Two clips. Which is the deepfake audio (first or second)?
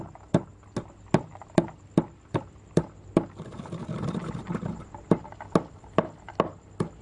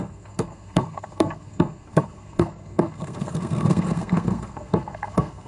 second